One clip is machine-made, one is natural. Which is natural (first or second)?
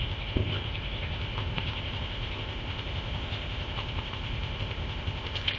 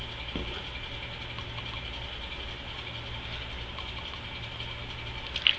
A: second